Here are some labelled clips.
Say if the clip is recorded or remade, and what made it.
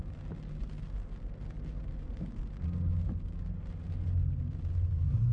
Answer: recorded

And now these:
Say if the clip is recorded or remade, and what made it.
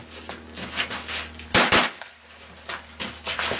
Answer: recorded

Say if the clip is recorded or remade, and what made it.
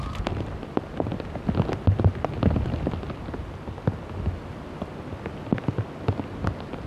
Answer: recorded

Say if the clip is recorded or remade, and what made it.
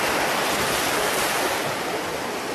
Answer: recorded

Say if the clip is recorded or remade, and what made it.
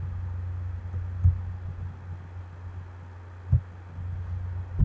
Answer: recorded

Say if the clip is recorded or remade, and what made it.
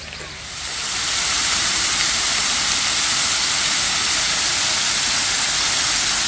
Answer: recorded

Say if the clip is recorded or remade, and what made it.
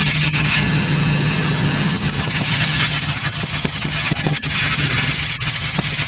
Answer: remade, vocoder, HiFi-GAN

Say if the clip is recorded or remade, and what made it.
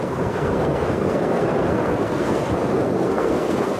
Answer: remade, codec, SNAC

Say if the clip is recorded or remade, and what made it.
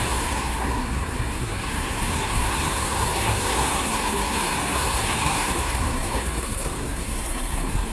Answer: remade, codec, SNAC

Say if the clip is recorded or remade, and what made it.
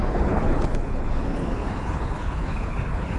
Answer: remade, codec, HILCodec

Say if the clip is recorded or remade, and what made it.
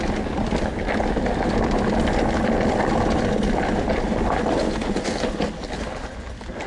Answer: recorded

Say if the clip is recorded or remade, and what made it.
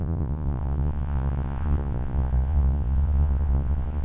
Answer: remade, vocoder, Vocos